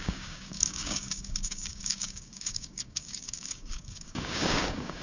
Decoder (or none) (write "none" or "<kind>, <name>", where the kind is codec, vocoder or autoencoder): codec, DAC